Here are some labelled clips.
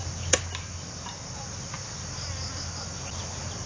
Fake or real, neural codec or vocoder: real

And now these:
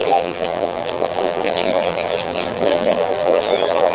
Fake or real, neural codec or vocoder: fake, vocoder, BigVGAN v2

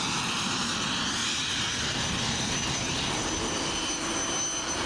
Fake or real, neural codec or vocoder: real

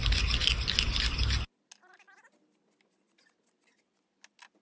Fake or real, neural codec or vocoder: real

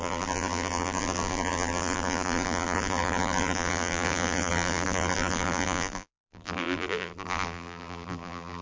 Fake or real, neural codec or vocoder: fake, vocoder, BigVGAN v2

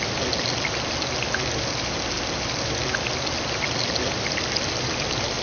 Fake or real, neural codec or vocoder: real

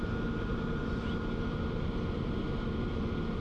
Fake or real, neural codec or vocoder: real